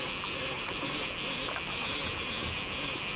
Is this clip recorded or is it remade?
recorded